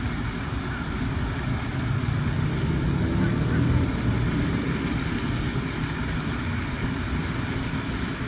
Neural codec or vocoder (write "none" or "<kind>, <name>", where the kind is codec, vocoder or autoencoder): none